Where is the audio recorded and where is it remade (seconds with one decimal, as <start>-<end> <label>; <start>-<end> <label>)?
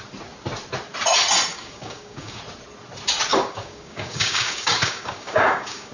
0.0-1.5 recorded; 1.5-2.4 remade; 2.4-3.3 recorded; 3.3-5.9 remade